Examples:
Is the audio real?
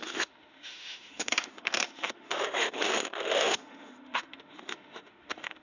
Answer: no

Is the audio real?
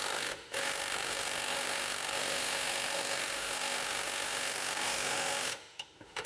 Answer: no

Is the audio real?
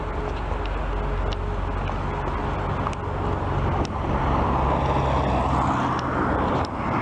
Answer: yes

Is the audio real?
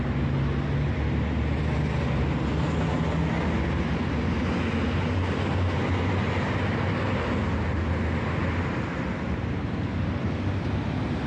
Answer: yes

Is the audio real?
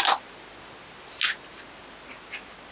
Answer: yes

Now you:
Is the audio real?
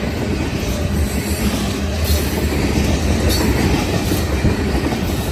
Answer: yes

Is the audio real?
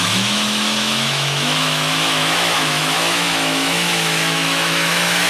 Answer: no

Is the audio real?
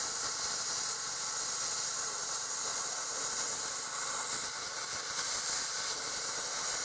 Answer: yes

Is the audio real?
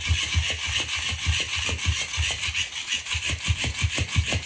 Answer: yes